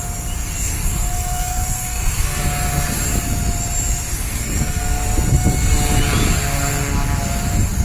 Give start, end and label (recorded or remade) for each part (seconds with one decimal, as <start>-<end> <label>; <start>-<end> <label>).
0.0-0.4 recorded; 0.4-2.4 remade; 2.4-4.1 recorded; 4.1-4.8 remade; 4.8-7.8 recorded